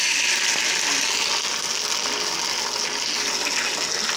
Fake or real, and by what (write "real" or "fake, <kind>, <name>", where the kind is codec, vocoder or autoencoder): real